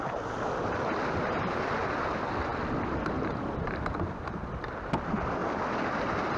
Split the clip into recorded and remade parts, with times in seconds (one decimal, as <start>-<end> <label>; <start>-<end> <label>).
0.0-6.4 recorded